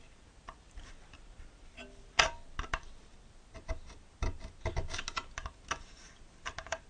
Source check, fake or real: real